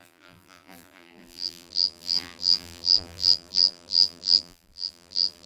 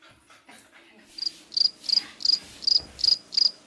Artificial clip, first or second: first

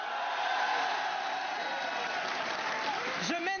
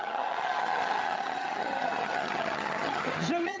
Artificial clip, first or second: second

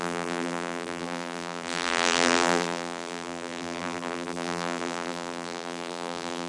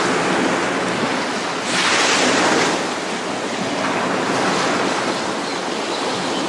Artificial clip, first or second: first